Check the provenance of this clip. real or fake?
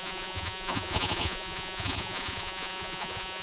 fake